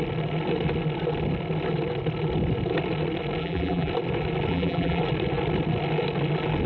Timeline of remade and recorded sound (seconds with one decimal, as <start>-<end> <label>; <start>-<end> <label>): 0.0-3.4 recorded; 3.4-3.9 remade; 3.9-4.5 recorded; 4.5-5.0 remade; 5.0-6.7 recorded